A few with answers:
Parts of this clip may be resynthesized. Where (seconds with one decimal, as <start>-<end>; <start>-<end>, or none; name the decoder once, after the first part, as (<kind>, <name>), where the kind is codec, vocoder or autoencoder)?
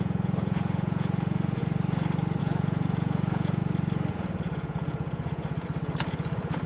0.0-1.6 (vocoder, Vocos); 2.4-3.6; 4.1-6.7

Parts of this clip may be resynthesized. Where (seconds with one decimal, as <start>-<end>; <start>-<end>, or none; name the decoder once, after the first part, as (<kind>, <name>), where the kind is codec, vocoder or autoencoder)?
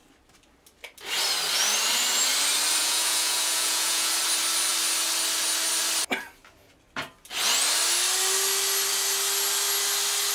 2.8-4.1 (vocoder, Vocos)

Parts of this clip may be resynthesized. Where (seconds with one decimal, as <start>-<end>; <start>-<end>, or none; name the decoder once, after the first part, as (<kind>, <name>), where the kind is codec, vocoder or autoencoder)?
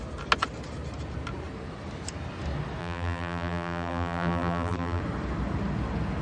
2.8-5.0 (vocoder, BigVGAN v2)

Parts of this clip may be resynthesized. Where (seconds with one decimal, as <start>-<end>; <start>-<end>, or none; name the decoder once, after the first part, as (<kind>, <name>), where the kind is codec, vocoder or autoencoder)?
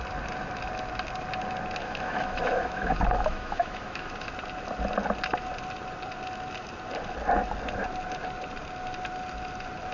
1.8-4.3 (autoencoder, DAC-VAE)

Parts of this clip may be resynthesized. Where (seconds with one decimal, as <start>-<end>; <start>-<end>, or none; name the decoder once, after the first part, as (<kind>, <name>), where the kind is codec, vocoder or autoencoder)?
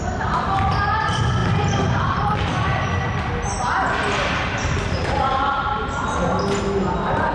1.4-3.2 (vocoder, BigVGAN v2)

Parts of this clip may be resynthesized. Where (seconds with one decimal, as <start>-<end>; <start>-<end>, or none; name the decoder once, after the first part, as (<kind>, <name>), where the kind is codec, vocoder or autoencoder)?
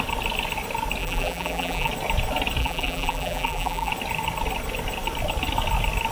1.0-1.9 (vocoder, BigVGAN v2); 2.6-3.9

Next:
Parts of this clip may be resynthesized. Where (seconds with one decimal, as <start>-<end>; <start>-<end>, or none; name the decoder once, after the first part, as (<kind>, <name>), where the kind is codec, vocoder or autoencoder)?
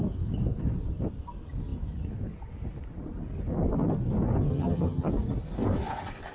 4.5-5.1 (vocoder, HiFi-GAN)